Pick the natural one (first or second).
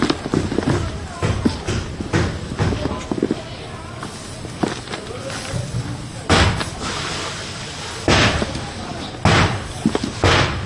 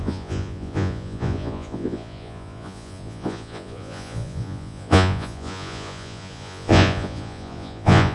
first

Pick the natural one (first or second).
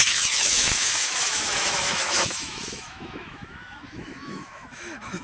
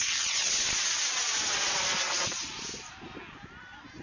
second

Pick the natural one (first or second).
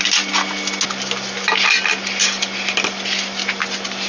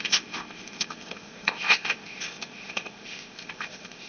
first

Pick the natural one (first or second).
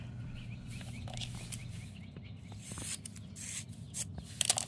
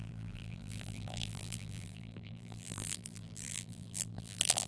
first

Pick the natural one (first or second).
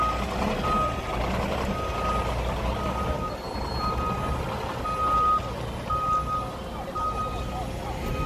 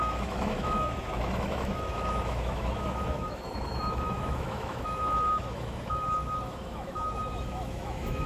first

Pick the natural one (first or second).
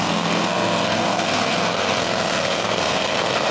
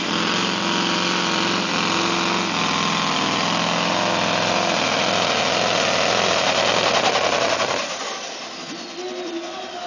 second